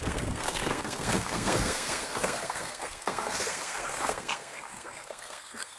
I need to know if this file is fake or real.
fake